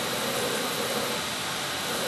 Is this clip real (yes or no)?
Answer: yes